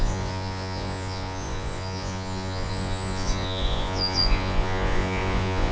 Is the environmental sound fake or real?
fake